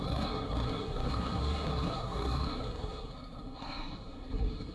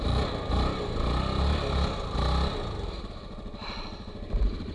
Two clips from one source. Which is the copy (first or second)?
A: first